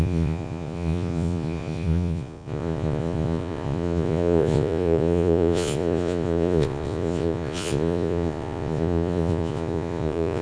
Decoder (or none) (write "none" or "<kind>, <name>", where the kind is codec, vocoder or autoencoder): vocoder, Vocos